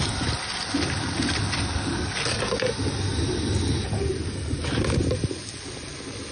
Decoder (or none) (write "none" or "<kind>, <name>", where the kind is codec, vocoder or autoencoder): none